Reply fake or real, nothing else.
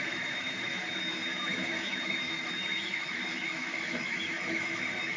fake